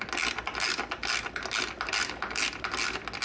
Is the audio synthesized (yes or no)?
no